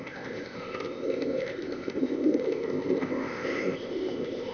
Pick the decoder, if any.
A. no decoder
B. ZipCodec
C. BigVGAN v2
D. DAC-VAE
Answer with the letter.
B